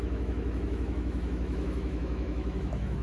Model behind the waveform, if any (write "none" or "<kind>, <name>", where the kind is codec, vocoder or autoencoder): autoencoder, DAC-VAE